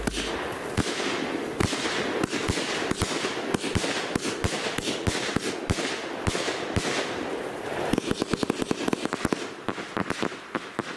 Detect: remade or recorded recorded